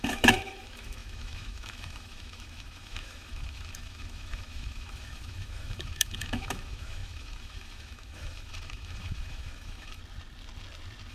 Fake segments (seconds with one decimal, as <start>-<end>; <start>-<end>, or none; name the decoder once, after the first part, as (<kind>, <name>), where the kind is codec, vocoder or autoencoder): 0.0-10.0 (autoencoder, DAC-VAE)